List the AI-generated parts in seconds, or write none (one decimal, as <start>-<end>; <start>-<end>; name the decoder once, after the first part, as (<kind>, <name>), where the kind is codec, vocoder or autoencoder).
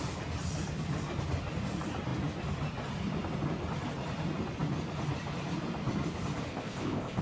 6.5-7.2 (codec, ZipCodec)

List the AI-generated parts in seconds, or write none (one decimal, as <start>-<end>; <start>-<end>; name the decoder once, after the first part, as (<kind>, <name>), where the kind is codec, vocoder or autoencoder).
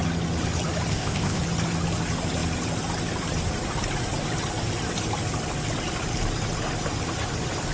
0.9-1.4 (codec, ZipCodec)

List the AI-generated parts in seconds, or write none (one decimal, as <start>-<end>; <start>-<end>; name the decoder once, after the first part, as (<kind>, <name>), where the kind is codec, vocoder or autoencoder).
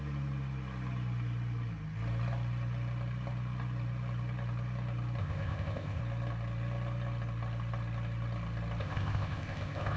5.2-6.0 (codec, ZipCodec); 8.8-10.0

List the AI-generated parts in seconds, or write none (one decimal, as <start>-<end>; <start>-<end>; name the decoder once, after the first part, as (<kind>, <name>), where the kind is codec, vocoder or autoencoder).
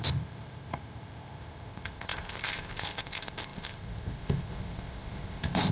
0.0-5.7 (codec, ZipCodec)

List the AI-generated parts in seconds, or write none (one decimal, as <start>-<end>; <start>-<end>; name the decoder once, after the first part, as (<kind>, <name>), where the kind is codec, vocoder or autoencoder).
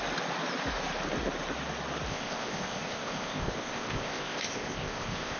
2.1-5.4 (codec, ZipCodec)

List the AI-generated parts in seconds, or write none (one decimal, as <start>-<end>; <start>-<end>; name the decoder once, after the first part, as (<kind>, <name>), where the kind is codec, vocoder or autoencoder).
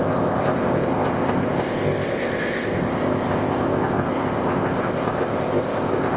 0.0-6.2 (codec, ZipCodec)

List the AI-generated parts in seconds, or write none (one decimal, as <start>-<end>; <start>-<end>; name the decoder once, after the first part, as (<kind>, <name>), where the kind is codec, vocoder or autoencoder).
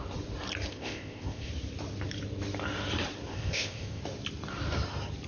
0.7-1.5 (codec, ZipCodec); 3.3-4.0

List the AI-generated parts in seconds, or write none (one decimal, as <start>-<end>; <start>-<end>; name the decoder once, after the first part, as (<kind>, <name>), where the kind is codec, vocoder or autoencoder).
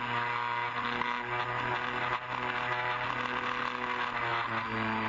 none